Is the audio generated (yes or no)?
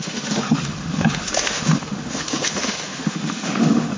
yes